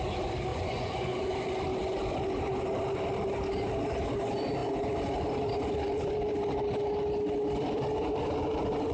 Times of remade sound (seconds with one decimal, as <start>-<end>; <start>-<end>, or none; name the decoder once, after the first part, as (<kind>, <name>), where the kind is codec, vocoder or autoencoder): 0.5-1.3 (vocoder, Vocos)